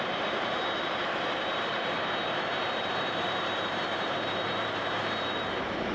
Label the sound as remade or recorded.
remade